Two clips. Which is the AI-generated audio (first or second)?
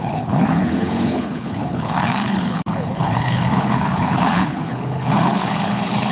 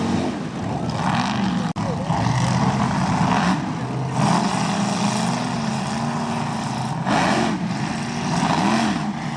first